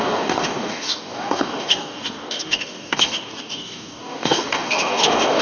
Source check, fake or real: fake